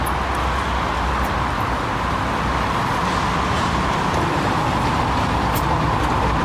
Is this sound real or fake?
real